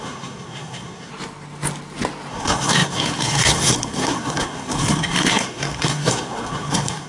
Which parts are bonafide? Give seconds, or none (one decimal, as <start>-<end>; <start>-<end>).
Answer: 1.1-2.3